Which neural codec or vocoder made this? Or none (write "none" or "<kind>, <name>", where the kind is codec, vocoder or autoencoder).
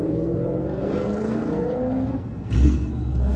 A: codec, SNAC